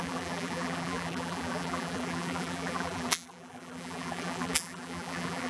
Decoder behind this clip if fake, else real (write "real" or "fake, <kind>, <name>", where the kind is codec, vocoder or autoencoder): fake, vocoder, BigVGAN v2